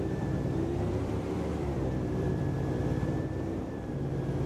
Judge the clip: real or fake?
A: fake